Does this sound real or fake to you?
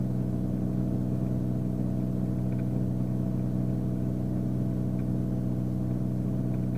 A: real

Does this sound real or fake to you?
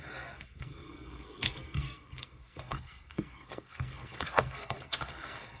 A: fake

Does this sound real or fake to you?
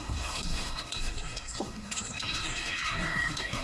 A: fake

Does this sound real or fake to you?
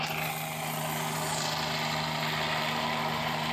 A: real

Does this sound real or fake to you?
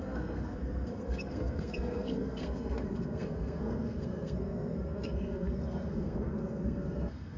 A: fake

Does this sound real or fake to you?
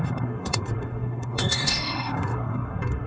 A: fake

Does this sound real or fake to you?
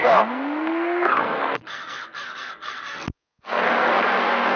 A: fake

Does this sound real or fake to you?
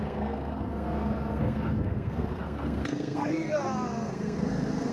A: fake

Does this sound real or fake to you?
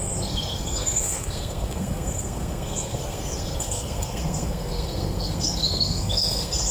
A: fake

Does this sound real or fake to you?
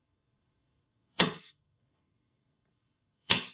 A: fake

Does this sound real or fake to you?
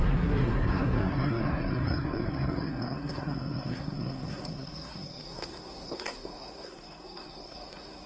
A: fake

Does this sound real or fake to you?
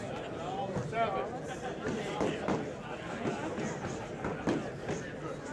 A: real